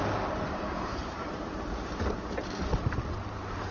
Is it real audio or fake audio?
fake